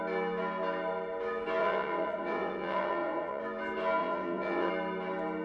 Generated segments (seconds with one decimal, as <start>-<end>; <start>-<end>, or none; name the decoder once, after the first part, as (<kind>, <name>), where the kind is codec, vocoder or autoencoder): 1.6-3.4 (vocoder, WaveNeXt); 4.0-4.7